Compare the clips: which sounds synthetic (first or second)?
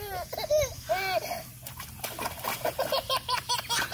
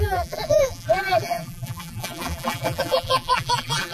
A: second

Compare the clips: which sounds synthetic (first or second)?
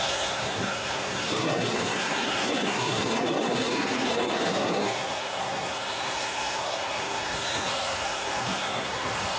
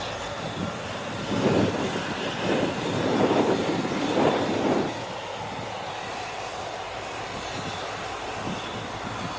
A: first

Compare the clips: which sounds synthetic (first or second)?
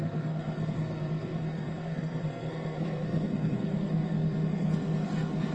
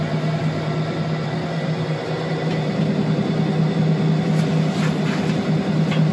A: first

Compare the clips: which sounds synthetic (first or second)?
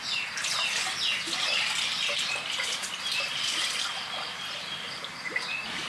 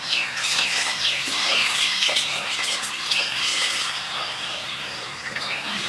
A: second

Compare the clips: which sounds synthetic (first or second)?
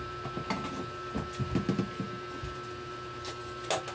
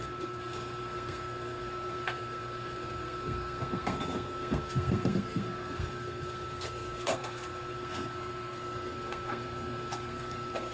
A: second